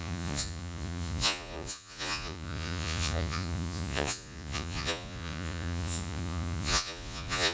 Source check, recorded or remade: remade